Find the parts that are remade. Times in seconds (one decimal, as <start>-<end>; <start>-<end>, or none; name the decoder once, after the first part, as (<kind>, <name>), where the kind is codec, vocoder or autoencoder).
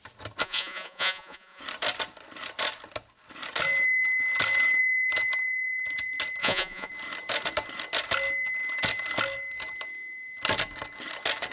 0.4-1.6 (vocoder, Vocos); 6.4-6.9